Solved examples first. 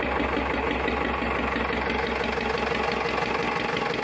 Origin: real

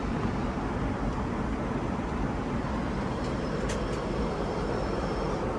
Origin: real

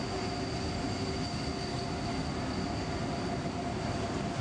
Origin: real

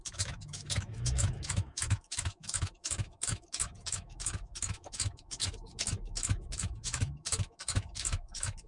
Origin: fake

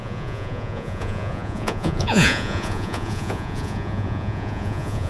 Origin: fake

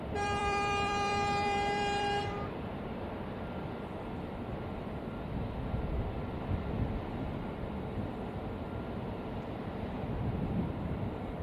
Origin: fake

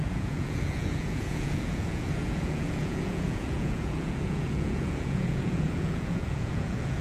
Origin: fake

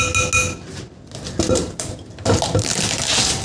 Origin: real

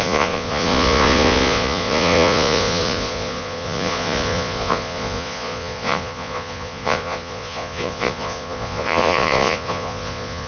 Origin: fake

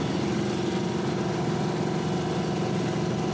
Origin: real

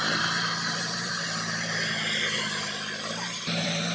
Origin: fake